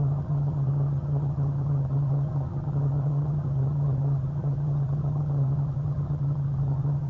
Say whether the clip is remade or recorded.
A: remade